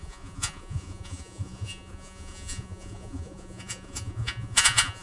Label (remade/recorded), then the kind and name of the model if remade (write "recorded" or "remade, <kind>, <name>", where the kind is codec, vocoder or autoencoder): remade, vocoder, Vocos